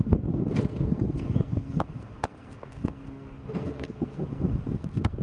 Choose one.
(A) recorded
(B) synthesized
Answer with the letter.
B